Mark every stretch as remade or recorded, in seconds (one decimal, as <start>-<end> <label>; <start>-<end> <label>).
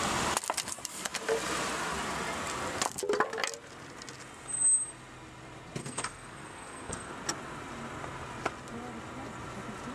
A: 0.0-5.8 recorded; 5.8-7.1 remade; 7.1-9.9 recorded